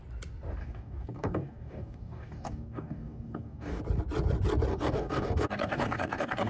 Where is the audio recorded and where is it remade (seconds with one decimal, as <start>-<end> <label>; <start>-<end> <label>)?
0.0-0.6 recorded; 0.6-3.8 remade; 3.8-4.7 recorded; 4.7-6.5 remade